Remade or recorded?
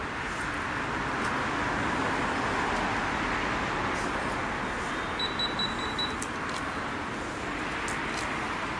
recorded